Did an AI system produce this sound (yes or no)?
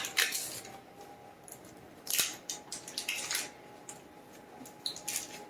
no